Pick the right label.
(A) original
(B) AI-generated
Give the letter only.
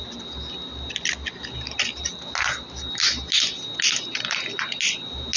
A